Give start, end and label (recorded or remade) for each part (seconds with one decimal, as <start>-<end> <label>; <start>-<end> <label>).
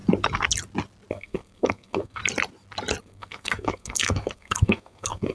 0.0-1.1 recorded; 1.1-2.2 remade; 2.2-3.0 recorded; 3.0-5.3 remade